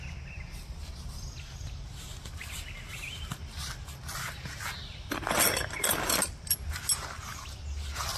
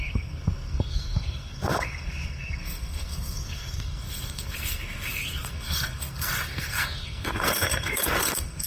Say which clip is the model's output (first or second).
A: second